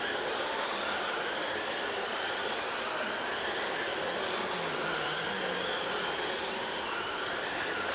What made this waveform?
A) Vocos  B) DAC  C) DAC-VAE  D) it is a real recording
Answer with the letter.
D